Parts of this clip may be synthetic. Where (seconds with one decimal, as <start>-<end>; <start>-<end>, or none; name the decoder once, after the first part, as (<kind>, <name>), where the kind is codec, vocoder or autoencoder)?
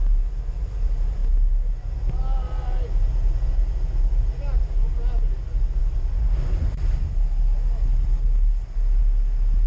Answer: none